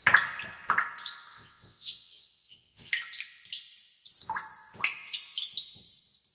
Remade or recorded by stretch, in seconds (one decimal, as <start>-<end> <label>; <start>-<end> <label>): 0.0-1.3 recorded; 1.3-2.9 remade; 2.9-6.3 recorded